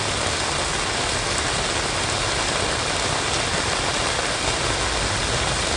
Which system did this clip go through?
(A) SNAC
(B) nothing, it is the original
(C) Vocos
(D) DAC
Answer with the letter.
B